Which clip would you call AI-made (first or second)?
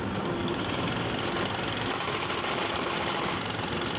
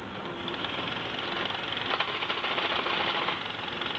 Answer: first